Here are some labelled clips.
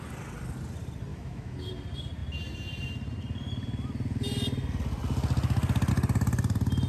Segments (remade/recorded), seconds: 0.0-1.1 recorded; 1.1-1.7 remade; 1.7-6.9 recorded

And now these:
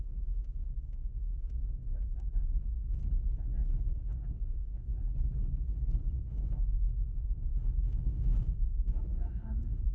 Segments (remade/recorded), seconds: 0.0-3.0 remade; 3.0-3.8 recorded; 3.8-4.9 remade; 4.9-6.3 recorded; 6.3-9.9 remade

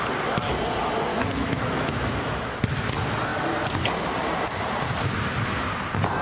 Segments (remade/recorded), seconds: 0.0-1.1 recorded; 1.1-2.5 remade; 2.5-6.2 recorded

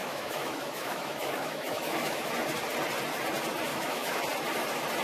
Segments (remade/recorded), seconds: 0.0-2.3 remade; 2.3-3.7 recorded; 3.7-4.2 remade; 4.2-5.0 recorded

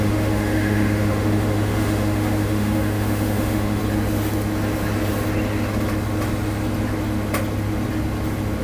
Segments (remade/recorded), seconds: 0.0-3.8 remade; 3.8-8.6 recorded

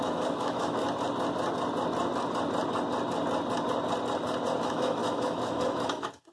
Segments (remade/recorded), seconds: 0.0-0.8 remade; 0.8-4.6 recorded; 4.6-6.3 remade